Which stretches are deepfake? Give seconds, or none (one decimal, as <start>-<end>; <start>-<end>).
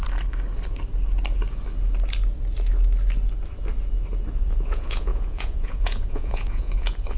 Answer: 4.3-7.2